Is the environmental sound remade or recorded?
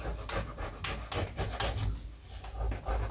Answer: recorded